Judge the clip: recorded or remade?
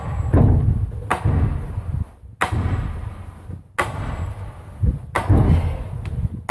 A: recorded